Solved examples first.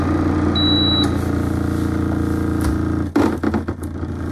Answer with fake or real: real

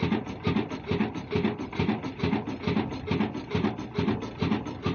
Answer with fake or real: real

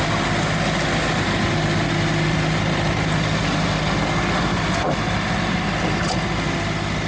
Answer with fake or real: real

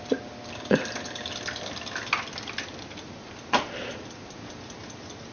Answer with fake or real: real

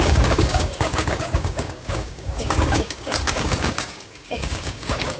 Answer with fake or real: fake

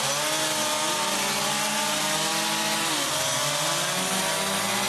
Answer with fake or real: real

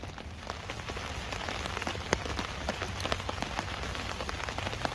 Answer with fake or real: real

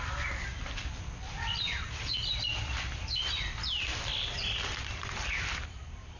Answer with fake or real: fake